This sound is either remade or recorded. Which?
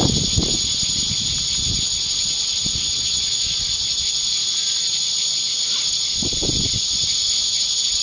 recorded